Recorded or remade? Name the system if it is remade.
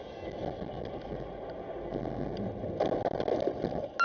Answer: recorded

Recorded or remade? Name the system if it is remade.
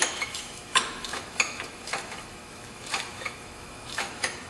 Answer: remade, autoencoder, DAC-VAE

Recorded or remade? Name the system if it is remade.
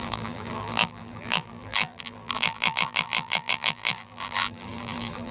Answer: remade, vocoder, BigVGAN v2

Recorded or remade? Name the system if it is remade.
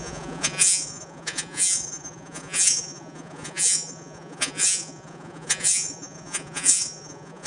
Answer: remade, vocoder, Vocos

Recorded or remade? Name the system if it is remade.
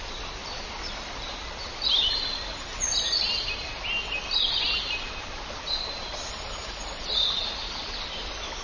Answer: recorded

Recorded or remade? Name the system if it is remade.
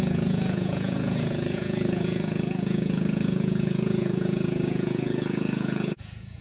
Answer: remade, vocoder, Vocos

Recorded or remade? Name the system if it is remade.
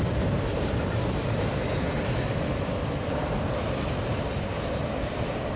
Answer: recorded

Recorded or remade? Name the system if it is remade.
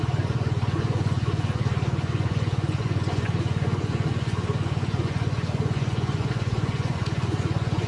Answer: remade, vocoder, Vocos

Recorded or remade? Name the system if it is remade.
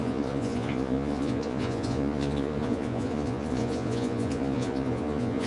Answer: remade, vocoder, Vocos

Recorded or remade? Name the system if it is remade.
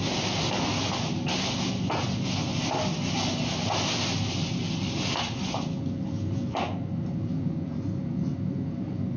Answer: recorded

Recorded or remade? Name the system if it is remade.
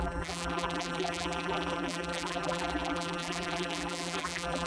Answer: remade, vocoder, BigVGAN v2